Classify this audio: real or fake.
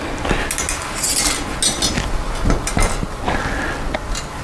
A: real